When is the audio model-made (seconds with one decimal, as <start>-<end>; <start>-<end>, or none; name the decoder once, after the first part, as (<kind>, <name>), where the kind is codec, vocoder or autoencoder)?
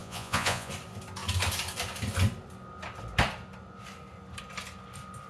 0.0-0.7 (vocoder, Vocos)